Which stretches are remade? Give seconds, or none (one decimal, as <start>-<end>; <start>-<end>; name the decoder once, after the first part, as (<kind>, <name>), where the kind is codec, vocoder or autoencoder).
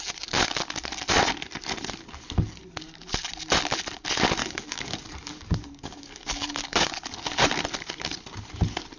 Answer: 4.4-6.9 (codec, DAC)